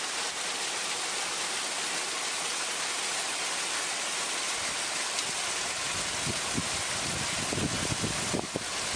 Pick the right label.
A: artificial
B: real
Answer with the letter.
B